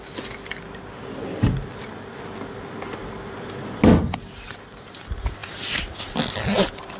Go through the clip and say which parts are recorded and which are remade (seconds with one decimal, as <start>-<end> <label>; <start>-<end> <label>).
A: 0.0-7.0 recorded